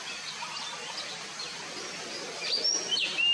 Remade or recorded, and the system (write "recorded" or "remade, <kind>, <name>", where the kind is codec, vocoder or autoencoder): recorded